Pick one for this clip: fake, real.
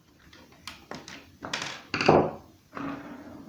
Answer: real